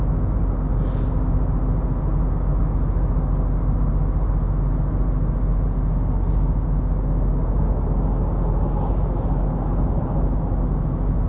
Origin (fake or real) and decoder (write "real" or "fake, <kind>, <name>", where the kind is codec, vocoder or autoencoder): real